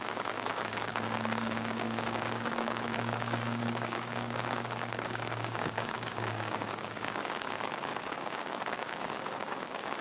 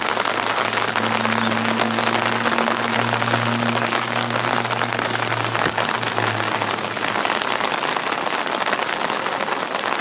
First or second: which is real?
second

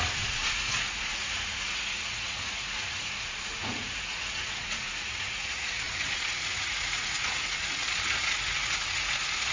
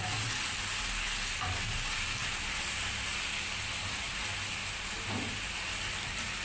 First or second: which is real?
second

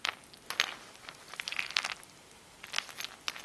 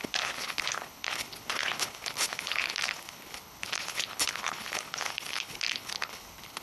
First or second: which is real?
first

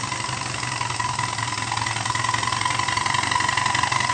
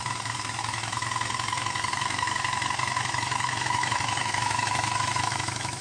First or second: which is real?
first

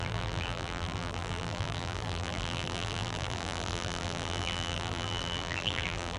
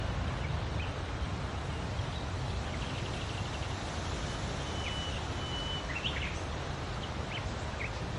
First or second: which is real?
second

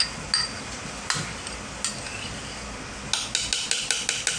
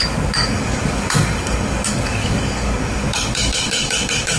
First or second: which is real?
first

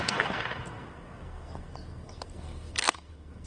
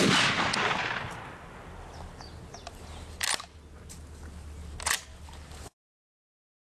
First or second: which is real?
second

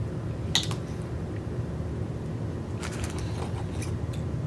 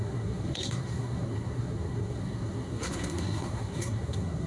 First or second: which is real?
first